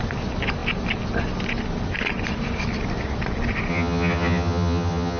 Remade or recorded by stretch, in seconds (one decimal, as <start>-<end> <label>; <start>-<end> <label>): 0.0-3.7 recorded; 3.7-5.2 remade